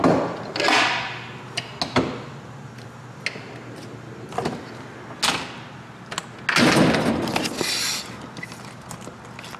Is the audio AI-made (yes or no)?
no